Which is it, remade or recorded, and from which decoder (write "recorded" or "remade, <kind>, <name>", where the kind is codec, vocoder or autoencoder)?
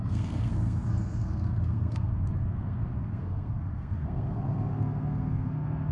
remade, codec, SNAC